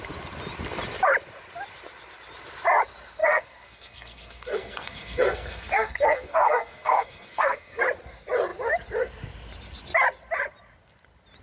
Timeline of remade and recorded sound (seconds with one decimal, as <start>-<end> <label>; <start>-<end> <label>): 0.0-3.2 recorded; 3.2-7.8 remade; 7.8-11.4 recorded